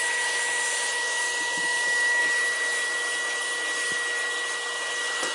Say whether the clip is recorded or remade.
recorded